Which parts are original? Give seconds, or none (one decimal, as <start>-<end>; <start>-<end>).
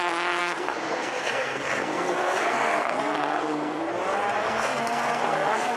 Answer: 0.0-0.4; 3.9-4.4